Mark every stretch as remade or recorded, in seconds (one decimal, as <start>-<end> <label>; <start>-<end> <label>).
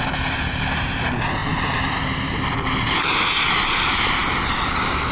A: 0.0-5.1 recorded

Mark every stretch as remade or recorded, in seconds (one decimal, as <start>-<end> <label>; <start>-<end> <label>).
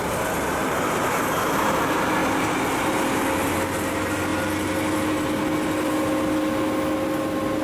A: 0.0-0.6 recorded; 0.6-1.8 remade; 1.8-7.6 recorded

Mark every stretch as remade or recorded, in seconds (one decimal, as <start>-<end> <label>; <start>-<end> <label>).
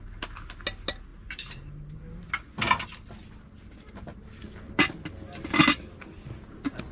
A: 0.0-1.1 recorded; 1.1-2.3 remade; 2.3-6.9 recorded